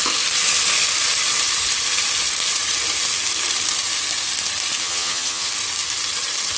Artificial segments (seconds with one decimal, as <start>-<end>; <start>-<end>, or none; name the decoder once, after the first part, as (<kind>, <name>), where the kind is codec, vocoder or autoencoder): 4.8-5.5 (vocoder, HiFi-GAN)